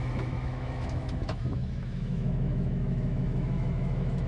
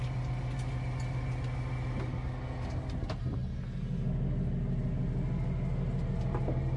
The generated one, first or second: first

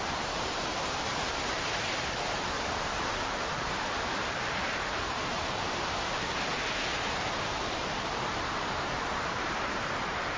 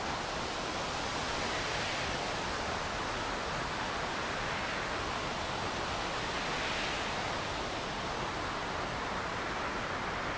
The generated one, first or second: first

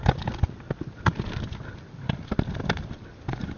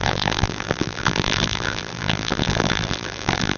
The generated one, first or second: second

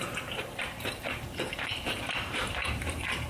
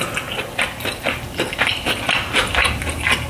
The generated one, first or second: first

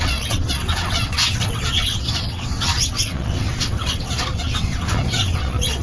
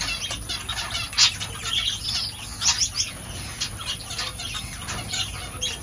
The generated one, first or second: first